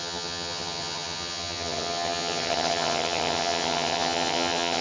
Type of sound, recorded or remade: remade